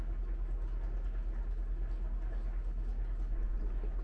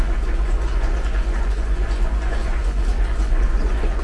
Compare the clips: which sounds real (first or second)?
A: first